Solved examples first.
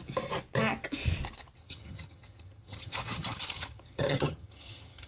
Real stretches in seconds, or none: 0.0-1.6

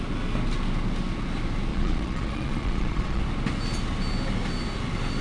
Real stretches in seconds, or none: 0.0-1.7; 3.2-5.2

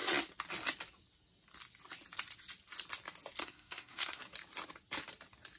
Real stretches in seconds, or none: 0.0-3.4; 4.2-5.6